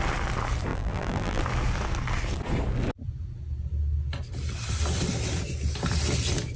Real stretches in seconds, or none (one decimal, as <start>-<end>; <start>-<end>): 0.0-0.7; 1.4-6.6